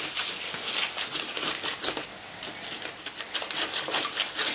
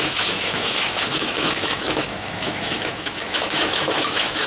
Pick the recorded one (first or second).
first